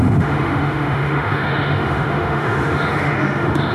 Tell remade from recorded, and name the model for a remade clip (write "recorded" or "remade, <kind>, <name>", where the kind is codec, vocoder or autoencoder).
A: remade, autoencoder, DAC-VAE